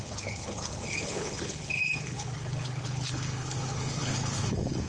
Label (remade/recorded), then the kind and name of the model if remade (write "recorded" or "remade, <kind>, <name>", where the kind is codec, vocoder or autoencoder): remade, codec, HILCodec